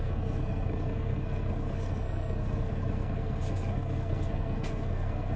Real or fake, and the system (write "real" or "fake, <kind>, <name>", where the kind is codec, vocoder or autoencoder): fake, codec, SNAC